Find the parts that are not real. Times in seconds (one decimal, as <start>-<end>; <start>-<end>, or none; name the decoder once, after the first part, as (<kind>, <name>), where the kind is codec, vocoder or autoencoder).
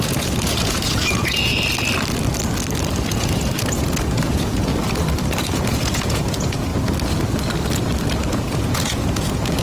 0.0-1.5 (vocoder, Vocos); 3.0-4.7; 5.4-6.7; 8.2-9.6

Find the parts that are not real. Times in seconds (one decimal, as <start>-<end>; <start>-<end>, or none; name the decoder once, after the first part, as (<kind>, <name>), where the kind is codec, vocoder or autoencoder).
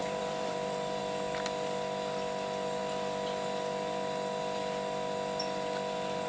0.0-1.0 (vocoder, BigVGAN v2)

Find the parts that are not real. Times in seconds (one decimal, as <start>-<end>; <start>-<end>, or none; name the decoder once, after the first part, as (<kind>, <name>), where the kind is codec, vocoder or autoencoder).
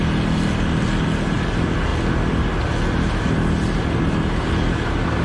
none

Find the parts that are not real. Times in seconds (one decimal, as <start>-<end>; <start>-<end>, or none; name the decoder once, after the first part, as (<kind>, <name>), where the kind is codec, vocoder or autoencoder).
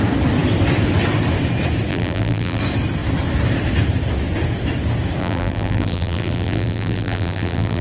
1.9-2.6 (vocoder, BigVGAN v2); 5.2-7.8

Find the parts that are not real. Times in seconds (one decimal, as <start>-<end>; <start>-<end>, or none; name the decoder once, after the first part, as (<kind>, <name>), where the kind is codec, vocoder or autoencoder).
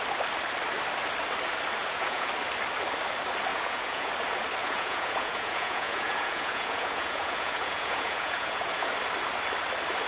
1.8-2.3 (vocoder, Vocos); 3.5-4.1; 4.6-8.9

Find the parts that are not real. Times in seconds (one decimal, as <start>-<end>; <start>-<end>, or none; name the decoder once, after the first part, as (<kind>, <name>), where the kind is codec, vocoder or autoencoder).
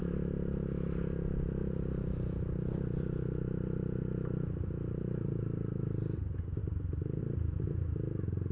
none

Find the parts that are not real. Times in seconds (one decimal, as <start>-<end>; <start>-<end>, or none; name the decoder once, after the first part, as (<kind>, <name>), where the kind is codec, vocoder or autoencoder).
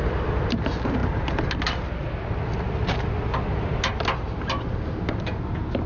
none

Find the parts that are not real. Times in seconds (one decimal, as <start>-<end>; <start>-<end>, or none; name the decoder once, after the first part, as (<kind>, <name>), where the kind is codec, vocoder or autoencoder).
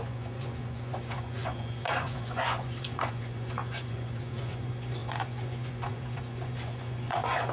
0.0-7.5 (vocoder, Vocos)